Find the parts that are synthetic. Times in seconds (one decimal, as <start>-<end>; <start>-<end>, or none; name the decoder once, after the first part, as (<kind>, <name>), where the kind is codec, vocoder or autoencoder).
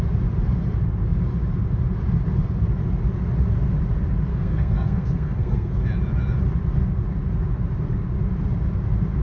4.3-5.7 (codec, SNAC)